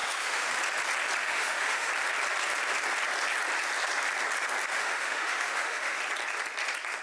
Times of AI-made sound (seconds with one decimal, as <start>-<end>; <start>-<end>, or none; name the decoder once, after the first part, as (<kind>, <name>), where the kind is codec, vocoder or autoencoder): 0.0-0.5 (autoencoder, DAC-VAE); 1.2-1.9; 4.7-6.0